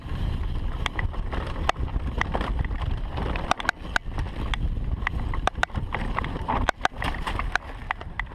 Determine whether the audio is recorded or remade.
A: remade